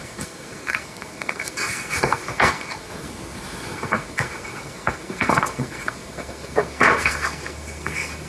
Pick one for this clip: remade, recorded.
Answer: remade